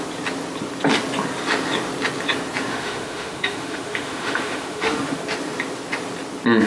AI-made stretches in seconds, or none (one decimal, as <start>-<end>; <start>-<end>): 2.7-5.2